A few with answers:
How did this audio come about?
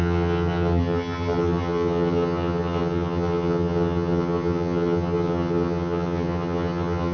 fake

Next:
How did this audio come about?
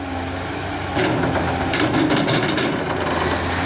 real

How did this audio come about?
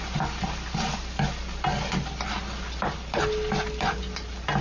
real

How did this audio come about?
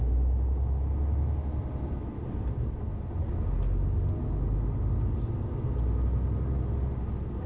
real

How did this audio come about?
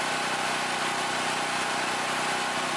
real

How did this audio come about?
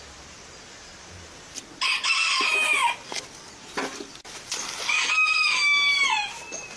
real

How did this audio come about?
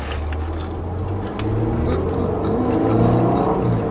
real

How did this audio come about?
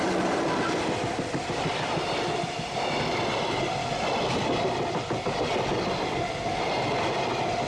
real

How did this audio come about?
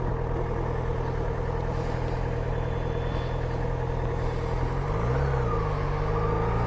real